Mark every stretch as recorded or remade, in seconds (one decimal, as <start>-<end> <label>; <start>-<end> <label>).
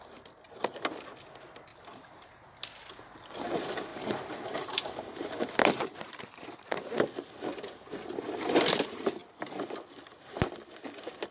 0.0-1.7 recorded; 1.7-2.5 remade; 2.5-3.9 recorded; 3.9-6.2 remade; 6.2-11.3 recorded